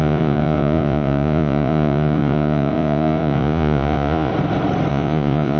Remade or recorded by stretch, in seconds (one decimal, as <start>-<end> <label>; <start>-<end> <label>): 0.0-4.3 remade; 4.3-4.9 recorded; 4.9-5.6 remade